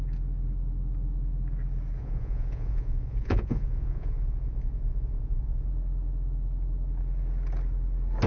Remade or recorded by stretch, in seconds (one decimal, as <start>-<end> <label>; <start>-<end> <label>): 0.0-2.0 recorded; 2.0-5.7 remade; 5.7-8.3 recorded